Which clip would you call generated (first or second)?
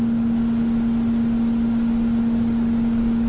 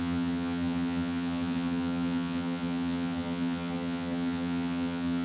second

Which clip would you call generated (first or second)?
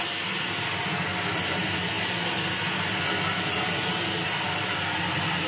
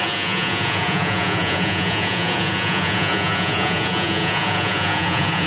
second